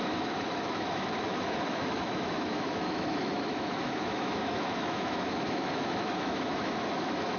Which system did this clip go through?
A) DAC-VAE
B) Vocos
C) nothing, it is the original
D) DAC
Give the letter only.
A